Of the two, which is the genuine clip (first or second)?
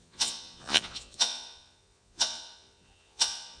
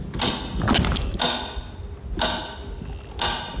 second